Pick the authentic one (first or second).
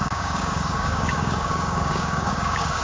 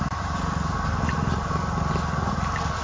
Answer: second